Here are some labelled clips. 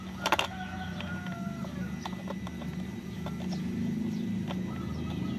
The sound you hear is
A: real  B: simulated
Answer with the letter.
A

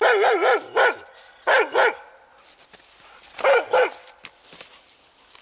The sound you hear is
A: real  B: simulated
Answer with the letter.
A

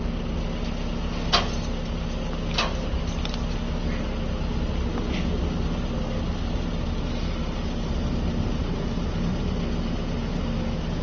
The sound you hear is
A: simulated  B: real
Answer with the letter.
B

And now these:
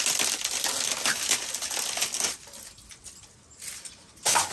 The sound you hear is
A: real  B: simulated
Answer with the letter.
A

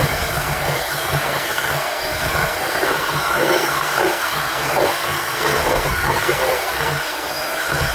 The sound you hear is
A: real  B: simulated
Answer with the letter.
B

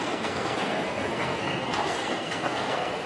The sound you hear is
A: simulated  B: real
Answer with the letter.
A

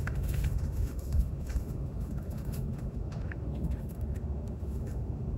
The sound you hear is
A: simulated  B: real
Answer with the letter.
A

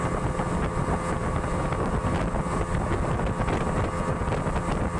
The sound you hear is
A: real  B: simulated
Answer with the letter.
A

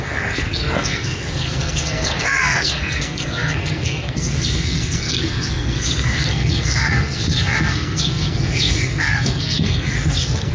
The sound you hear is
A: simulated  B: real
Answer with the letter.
A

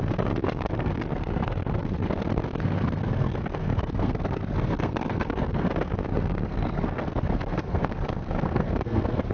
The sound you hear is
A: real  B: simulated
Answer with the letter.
B